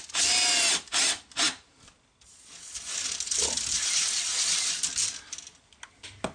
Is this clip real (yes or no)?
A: yes